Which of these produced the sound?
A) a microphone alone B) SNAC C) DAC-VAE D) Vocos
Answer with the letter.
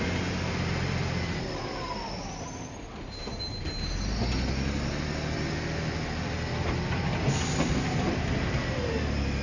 A